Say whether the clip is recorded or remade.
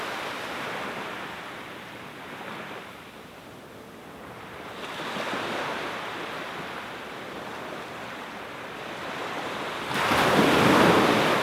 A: recorded